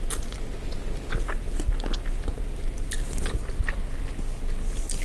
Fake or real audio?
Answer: real